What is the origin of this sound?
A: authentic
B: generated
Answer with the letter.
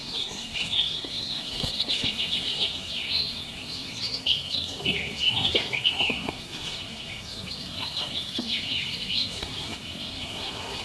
B